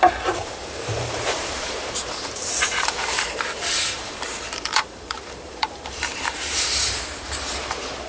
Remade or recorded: remade